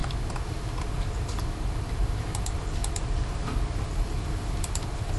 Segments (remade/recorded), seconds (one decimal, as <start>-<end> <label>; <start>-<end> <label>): 0.0-1.9 recorded; 1.9-5.2 remade